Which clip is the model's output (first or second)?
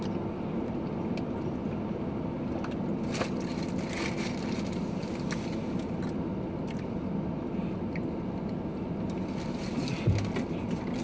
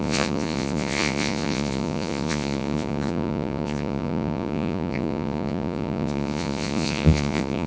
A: second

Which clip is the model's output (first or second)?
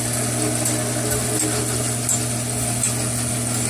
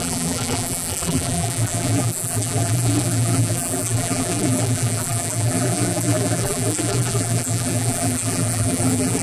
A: second